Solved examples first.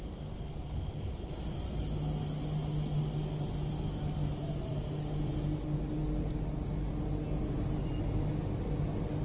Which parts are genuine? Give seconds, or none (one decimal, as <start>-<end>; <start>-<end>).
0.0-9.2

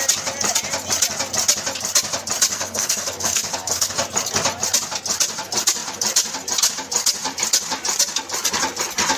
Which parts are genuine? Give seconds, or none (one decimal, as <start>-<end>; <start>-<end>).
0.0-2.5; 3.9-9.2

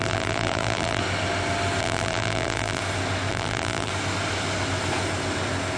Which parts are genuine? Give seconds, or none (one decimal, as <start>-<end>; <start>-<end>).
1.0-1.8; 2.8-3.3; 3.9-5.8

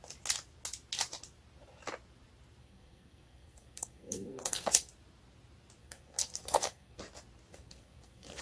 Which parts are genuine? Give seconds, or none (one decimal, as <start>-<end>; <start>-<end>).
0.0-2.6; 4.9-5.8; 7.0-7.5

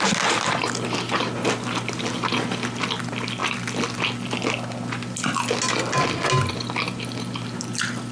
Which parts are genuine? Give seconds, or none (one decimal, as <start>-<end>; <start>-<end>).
0.0-8.1

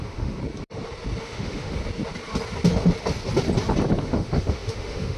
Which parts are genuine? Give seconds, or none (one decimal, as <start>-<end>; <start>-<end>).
0.4-1.2; 1.8-4.0

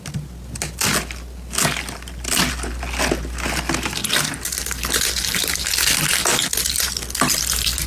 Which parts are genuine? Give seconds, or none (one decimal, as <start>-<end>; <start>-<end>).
0.0-7.9

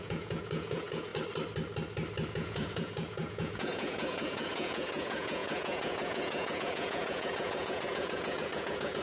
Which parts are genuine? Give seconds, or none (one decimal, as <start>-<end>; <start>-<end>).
1.1-2.3